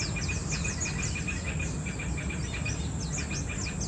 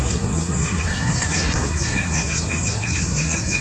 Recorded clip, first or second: first